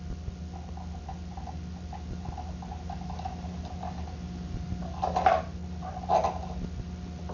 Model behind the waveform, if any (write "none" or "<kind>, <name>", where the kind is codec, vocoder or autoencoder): none